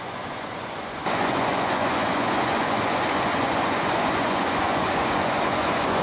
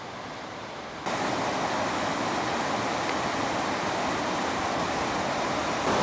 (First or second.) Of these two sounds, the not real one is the first